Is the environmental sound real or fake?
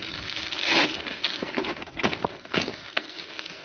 fake